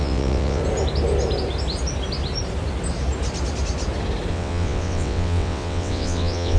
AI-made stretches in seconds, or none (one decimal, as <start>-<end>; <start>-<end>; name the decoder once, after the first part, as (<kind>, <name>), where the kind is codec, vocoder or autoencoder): 0.0-0.6 (vocoder, WaveNeXt); 4.3-6.6